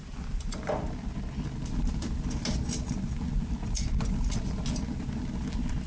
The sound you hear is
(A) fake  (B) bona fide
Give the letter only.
B